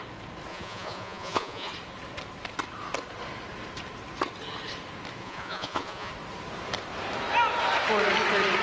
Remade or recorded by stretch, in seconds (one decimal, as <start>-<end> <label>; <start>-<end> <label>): 0.0-0.5 recorded; 0.5-1.7 remade; 1.7-5.2 recorded; 5.2-6.1 remade; 6.1-8.6 recorded